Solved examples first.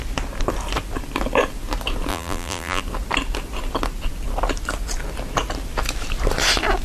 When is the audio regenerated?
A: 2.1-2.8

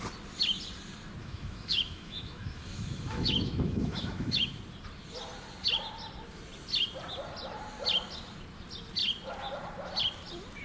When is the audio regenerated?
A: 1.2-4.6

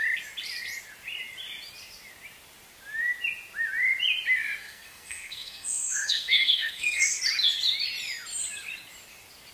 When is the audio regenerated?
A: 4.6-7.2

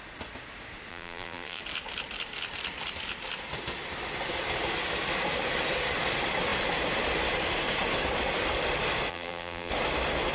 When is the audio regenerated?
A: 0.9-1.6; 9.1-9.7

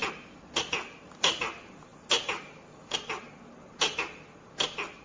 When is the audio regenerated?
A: 0.0-1.4

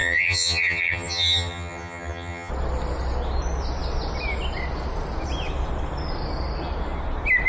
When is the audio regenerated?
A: 0.0-2.5

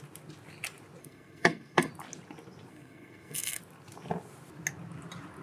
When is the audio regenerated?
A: 1.0-1.9; 2.7-3.6